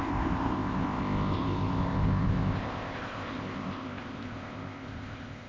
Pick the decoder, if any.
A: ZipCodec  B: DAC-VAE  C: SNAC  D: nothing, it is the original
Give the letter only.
A